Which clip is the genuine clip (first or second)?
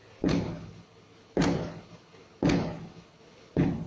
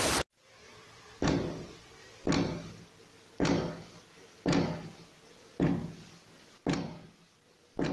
second